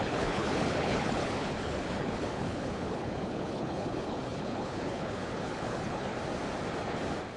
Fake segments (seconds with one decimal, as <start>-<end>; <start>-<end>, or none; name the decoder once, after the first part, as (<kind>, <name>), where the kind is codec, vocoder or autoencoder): 0.0-6.1 (codec, HILCodec)